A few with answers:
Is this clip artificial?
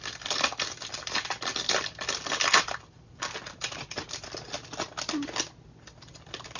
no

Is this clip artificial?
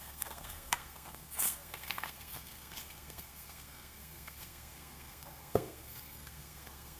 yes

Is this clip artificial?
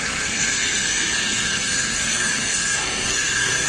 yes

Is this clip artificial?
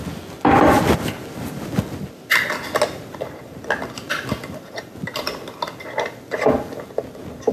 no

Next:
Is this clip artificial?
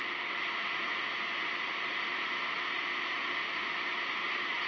no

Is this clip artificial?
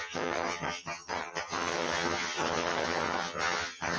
yes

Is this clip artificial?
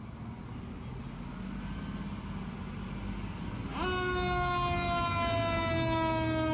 no